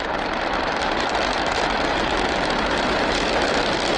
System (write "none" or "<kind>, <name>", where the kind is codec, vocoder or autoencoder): vocoder, BigVGAN v2